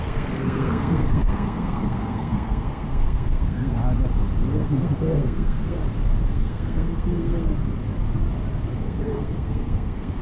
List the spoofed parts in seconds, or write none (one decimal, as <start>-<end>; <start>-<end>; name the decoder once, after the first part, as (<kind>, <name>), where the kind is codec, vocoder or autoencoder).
0.0-3.8 (codec, SNAC); 4.5-5.8; 6.3-7.5; 8.7-10.2